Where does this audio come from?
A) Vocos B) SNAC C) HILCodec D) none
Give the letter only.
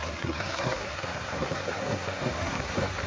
B